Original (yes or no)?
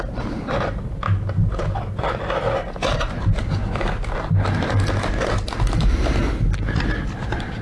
yes